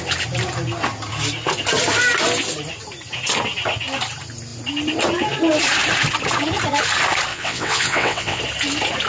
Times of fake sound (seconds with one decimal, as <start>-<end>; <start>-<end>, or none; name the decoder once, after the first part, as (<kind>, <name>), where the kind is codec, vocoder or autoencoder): 7.3-8.4 (vocoder, WaveNeXt)